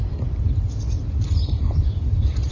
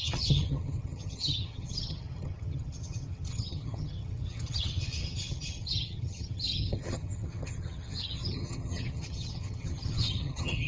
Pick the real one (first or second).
first